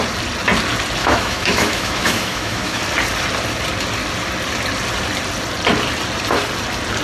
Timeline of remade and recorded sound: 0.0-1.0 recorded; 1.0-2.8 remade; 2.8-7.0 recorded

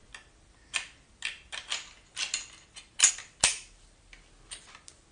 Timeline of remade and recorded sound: 0.0-5.1 recorded

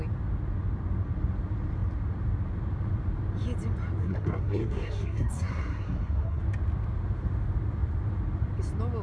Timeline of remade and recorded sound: 0.0-4.0 recorded; 4.0-6.4 remade; 6.4-9.0 recorded

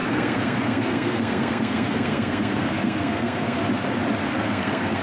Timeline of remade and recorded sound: 0.0-3.6 remade; 3.6-4.4 recorded; 4.4-5.0 remade

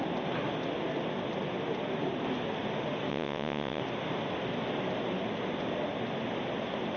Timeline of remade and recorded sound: 0.0-3.1 recorded; 3.1-3.8 remade; 3.8-7.0 recorded

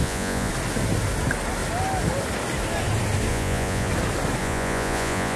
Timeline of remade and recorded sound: 0.0-0.5 remade; 0.5-3.3 recorded; 3.3-3.9 remade; 3.9-4.4 recorded; 4.4-5.4 remade

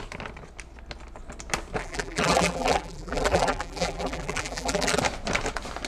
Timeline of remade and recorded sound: 0.0-1.8 recorded; 1.8-5.0 remade; 5.0-5.9 recorded

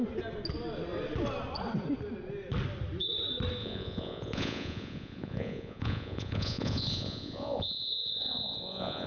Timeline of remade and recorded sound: 0.0-3.6 recorded; 3.6-9.1 remade